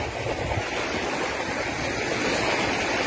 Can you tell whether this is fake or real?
real